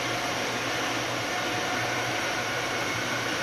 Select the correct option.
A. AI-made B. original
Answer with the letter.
B